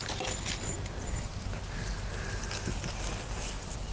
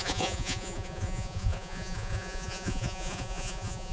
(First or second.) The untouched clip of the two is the first